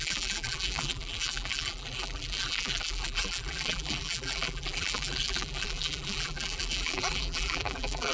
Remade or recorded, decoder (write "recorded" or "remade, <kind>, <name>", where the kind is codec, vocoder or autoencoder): remade, vocoder, BigVGAN v2